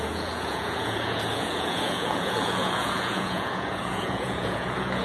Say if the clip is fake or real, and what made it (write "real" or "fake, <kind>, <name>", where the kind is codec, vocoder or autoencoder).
fake, vocoder, Vocos